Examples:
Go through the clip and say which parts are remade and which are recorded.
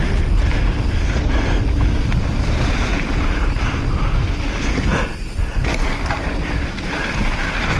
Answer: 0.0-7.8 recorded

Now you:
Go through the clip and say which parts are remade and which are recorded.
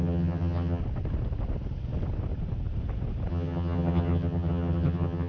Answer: 0.0-0.8 remade; 0.8-3.3 recorded; 3.3-5.3 remade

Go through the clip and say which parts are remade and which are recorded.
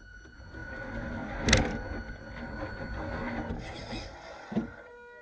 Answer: 0.0-5.2 recorded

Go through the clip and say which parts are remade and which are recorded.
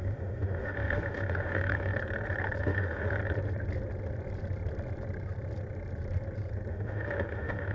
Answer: 0.0-1.9 remade; 1.9-2.6 recorded; 2.6-3.2 remade; 3.2-6.7 recorded; 6.7-7.7 remade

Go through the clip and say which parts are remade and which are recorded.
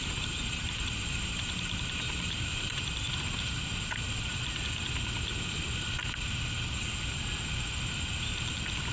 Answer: 0.0-2.8 remade; 2.8-8.9 recorded